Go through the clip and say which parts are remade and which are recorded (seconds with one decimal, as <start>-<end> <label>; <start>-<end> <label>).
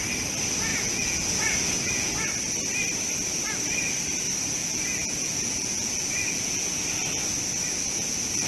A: 0.0-0.7 recorded; 0.7-2.1 remade; 2.1-4.6 recorded; 4.6-6.7 remade; 6.7-8.5 recorded